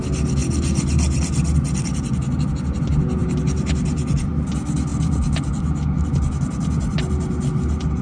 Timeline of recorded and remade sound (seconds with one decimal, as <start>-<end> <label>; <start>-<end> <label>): 0.0-3.2 recorded; 3.2-3.7 remade; 3.7-8.0 recorded